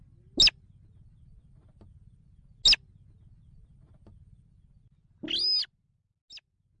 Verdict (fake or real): real